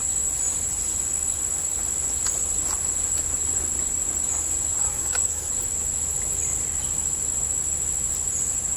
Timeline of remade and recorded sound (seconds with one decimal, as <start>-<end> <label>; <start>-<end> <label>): 0.0-4.8 recorded; 4.8-5.5 remade; 5.5-8.8 recorded